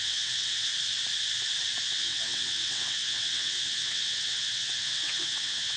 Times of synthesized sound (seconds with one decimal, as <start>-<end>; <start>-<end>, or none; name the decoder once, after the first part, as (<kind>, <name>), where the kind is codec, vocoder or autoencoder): 0.0-0.7 (vocoder, WaveNeXt); 1.8-5.8